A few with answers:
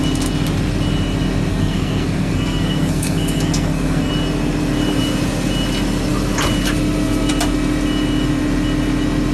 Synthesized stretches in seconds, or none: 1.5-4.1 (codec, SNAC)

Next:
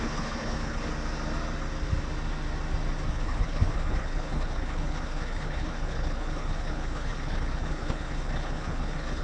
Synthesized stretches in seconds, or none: 0.0-0.9 (codec, HILCodec); 3.1-9.2